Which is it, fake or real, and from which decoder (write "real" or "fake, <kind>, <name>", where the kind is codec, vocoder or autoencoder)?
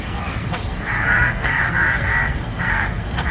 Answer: fake, codec, SNAC